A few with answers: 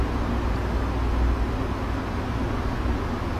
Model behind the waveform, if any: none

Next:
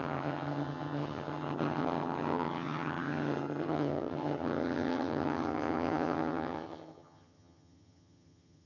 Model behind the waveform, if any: vocoder, HiFi-GAN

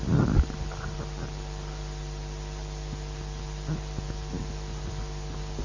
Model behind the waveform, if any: none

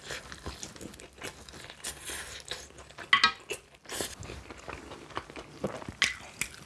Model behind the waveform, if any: none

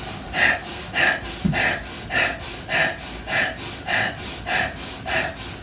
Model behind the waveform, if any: none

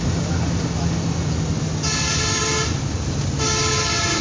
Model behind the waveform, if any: none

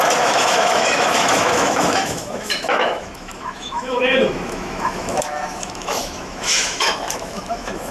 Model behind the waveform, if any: autoencoder, DAC-VAE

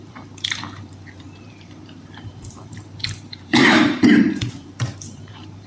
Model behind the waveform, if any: vocoder, BigVGAN v2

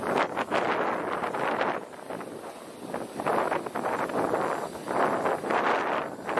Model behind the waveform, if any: none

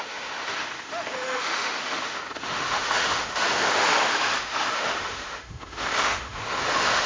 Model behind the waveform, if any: autoencoder, DAC-VAE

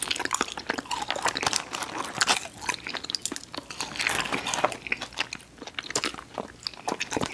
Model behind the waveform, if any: none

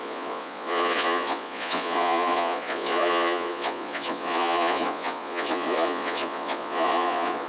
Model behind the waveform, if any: vocoder, Vocos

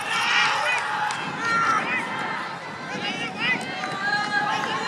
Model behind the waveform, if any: none